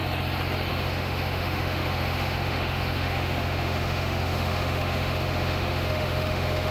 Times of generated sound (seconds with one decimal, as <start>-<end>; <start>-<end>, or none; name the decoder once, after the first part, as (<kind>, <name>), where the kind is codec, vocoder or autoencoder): 0.7-6.7 (autoencoder, DAC-VAE)